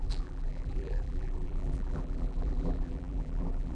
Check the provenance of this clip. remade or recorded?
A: remade